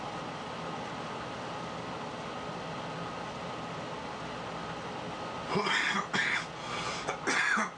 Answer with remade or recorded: recorded